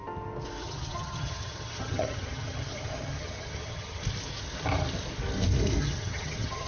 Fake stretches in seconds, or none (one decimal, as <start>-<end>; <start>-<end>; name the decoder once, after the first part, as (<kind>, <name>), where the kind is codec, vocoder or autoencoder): 0.6-4.0 (vocoder, HiFi-GAN); 5.8-6.7